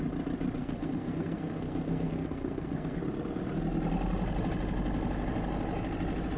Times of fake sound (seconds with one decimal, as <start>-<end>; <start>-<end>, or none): 0.6-3.0